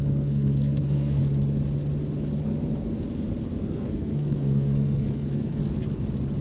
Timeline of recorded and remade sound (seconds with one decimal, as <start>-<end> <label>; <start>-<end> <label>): 0.0-1.2 remade; 1.2-3.6 recorded; 3.6-5.6 remade; 5.6-6.4 recorded